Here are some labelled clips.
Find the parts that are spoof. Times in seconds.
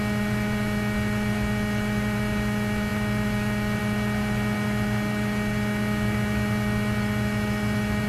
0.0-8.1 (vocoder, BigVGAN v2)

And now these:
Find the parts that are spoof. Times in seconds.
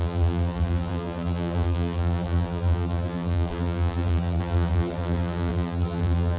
0.0-6.4 (vocoder, BigVGAN v2)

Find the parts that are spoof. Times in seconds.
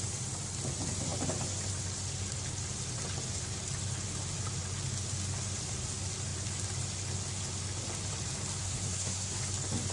8.6-9.4 (codec, SNAC)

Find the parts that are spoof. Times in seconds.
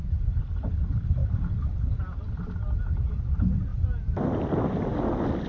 none